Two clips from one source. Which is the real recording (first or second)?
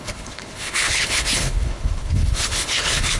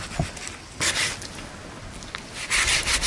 second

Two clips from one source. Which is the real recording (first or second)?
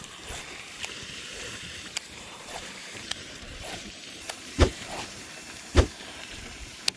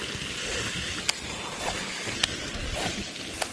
second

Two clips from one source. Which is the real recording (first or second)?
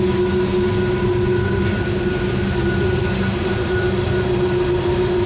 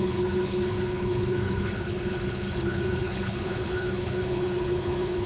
first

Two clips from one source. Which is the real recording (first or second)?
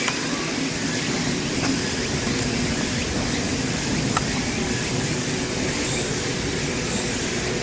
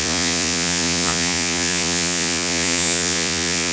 first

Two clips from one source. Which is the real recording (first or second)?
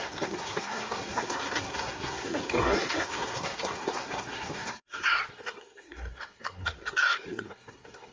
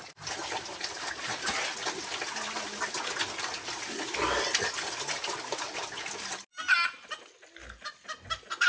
second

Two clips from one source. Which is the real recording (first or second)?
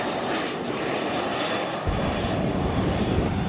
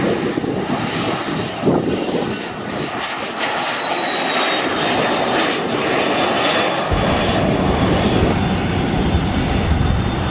second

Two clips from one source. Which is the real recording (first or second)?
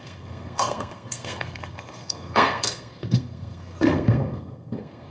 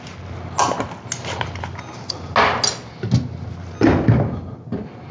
second